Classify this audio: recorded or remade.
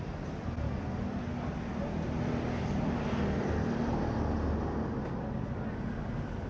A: recorded